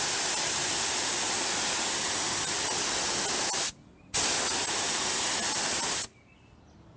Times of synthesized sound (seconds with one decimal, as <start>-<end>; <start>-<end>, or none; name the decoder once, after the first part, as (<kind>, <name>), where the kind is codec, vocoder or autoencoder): none